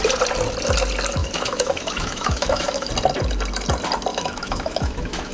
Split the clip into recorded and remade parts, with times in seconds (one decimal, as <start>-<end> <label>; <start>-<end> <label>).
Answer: 0.0-1.2 recorded; 1.2-2.9 remade; 2.9-4.1 recorded; 4.1-5.3 remade

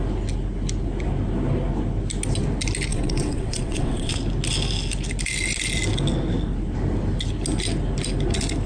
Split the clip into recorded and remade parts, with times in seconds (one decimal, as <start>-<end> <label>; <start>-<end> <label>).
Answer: 0.0-2.9 recorded; 2.9-4.1 remade; 4.1-8.7 recorded